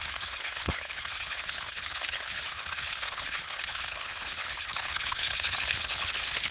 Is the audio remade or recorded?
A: remade